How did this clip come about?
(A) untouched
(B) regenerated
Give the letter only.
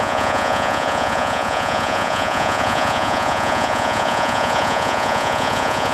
B